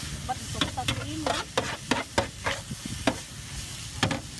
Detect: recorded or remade recorded